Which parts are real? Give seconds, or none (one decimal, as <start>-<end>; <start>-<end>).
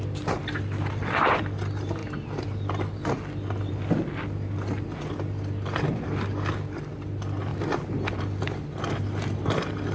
2.0-3.7; 7.5-8.2